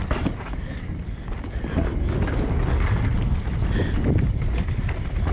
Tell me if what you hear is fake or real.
real